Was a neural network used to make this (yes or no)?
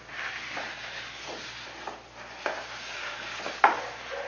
no